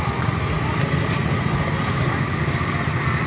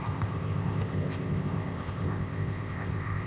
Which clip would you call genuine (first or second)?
first